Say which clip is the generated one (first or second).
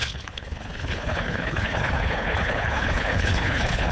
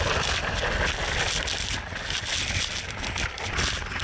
first